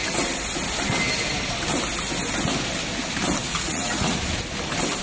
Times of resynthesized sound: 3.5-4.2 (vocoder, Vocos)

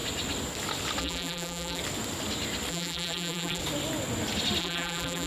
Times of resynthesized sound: 1.0-1.8 (vocoder, BigVGAN v2); 2.7-3.6; 4.6-5.3

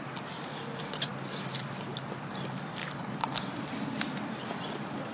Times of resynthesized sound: 2.8-3.4 (codec, HILCodec)

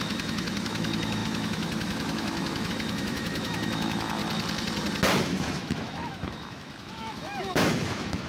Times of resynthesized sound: 0.0-4.2 (autoencoder, DAC-VAE); 5.2-8.3

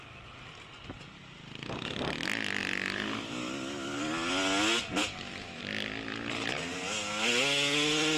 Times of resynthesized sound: 5.0-5.6 (autoencoder, DAC-VAE)